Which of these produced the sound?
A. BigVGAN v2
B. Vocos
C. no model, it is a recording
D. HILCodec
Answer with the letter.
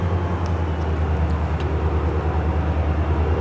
C